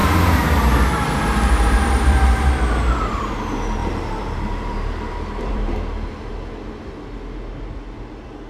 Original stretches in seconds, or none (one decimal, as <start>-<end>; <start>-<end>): 3.3-3.8; 6.3-8.5

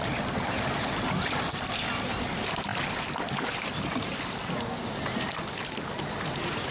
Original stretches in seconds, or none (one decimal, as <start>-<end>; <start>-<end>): 0.0-6.7

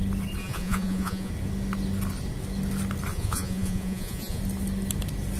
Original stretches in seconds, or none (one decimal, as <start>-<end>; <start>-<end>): 0.0-0.4; 1.3-3.1; 4.4-5.4

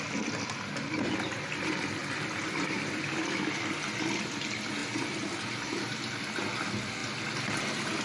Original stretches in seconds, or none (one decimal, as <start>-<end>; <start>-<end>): 0.0-4.8; 6.3-8.0

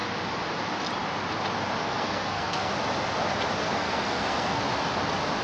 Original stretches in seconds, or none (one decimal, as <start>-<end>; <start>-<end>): 0.0-1.8; 2.7-3.6; 4.6-5.4

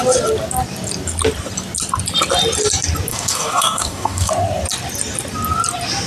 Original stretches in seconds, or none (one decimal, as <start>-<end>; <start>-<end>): 0.0-3.1; 4.3-6.1